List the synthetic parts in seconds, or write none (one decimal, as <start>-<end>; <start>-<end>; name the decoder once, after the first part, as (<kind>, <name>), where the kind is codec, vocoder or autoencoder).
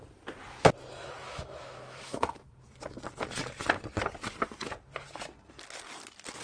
1.2-2.5 (autoencoder, DAC-VAE)